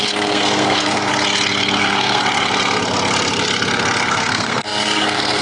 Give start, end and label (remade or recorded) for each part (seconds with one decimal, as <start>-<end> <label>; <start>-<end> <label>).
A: 0.0-1.1 remade; 1.1-1.8 recorded; 1.8-2.2 remade; 2.2-4.1 recorded; 4.1-5.4 remade